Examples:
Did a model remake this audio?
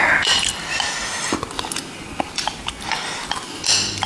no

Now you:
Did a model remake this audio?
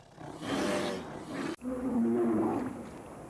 no